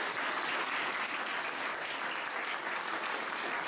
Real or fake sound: real